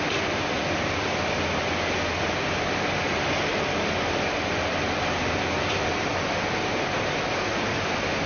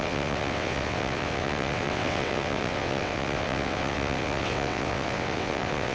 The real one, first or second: first